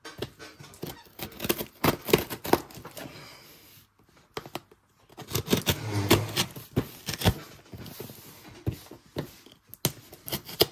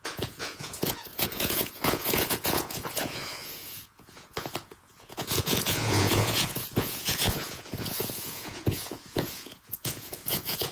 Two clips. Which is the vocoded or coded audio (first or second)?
second